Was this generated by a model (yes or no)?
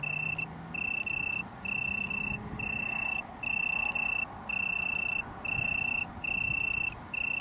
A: no